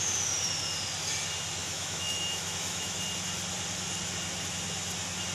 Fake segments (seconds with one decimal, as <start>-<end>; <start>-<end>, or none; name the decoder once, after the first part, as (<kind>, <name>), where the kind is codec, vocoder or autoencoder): 1.6-3.0 (autoencoder, DAC-VAE)